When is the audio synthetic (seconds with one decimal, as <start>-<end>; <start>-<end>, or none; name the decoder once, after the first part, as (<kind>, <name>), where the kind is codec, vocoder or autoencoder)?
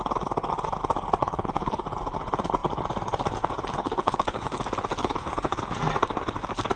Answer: 1.2-1.8 (codec, HILCodec); 3.8-4.6; 5.0-5.6